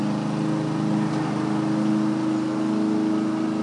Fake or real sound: real